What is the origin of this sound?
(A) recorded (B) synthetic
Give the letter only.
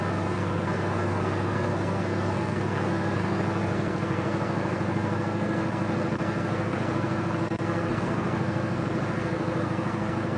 B